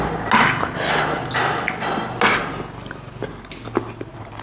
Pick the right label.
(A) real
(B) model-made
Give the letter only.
A